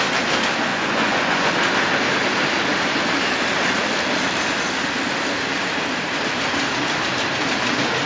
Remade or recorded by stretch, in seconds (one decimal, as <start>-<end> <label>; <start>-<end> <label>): 0.0-0.7 recorded; 0.7-1.5 remade; 1.5-8.1 recorded